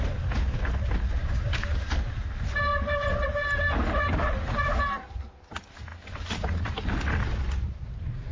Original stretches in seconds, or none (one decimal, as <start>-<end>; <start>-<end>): 0.0-1.2; 1.9-8.3